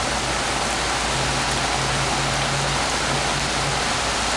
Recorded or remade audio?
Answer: recorded